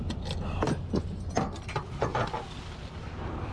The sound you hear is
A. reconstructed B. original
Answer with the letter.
B